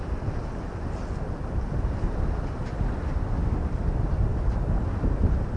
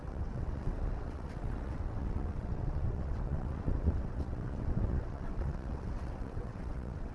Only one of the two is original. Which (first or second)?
first